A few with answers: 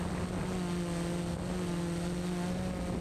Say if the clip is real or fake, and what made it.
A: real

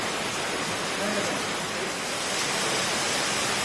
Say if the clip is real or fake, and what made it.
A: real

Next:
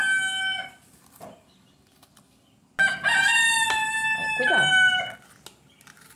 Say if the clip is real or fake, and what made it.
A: real